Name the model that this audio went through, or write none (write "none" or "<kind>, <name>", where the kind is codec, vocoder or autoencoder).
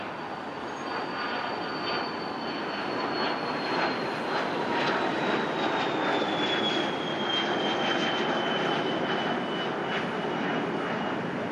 none